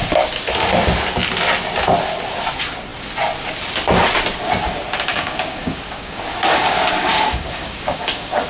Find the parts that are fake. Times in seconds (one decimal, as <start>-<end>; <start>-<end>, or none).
5.1-8.5